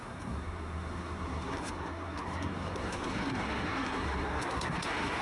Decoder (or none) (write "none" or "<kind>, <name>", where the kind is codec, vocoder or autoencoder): codec, SNAC